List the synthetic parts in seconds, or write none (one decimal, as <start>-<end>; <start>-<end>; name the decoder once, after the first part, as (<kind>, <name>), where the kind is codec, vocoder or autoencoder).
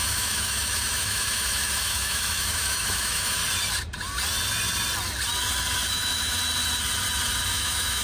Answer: 0.0-3.4 (autoencoder, DAC-VAE); 5.9-6.4; 7.5-8.0